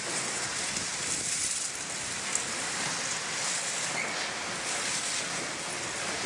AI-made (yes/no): no